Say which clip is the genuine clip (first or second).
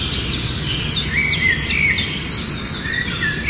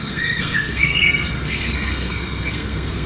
first